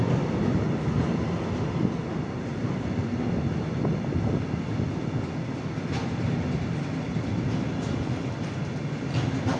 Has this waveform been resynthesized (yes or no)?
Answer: no